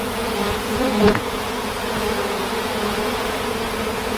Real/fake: fake